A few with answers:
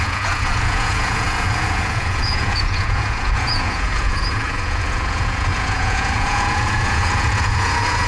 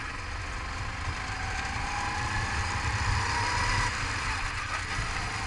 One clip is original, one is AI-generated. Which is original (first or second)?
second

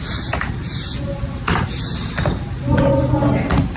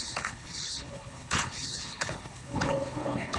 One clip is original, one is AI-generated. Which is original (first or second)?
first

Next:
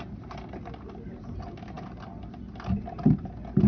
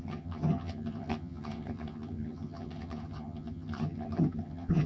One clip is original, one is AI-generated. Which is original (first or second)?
first